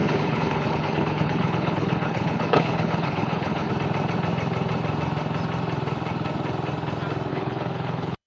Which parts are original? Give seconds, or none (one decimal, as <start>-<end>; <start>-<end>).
3.7-7.3